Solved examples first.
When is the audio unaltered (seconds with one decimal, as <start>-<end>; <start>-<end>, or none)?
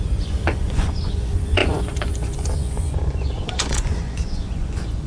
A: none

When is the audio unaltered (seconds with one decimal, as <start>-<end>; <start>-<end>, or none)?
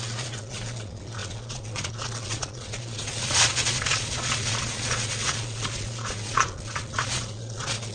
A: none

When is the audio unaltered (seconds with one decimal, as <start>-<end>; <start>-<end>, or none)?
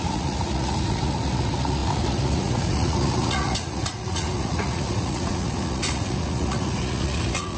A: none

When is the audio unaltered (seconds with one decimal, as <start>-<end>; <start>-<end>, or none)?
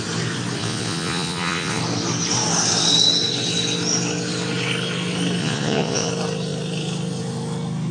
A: 0.0-0.6; 1.8-5.4; 6.1-7.9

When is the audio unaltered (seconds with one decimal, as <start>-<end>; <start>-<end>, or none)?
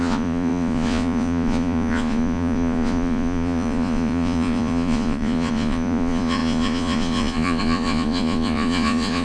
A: none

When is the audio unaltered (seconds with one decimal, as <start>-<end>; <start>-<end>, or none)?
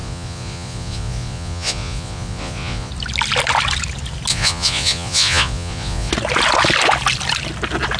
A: 2.9-4.3; 6.1-8.0